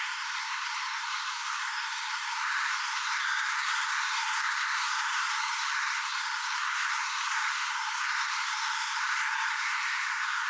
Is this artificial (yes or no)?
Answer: yes